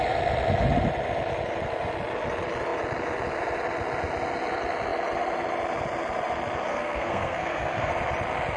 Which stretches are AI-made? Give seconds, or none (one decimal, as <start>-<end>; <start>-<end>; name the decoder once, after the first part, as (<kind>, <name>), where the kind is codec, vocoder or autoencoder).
6.7-7.9 (codec, SNAC)